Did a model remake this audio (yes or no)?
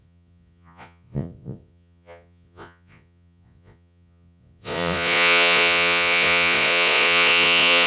yes